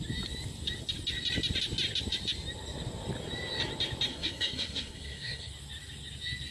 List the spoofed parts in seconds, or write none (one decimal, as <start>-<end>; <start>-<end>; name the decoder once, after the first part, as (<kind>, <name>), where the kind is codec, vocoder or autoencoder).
4.1-5.5 (codec, SNAC)